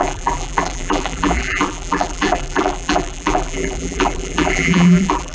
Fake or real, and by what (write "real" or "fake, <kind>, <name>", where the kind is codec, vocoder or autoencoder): fake, vocoder, BigVGAN v2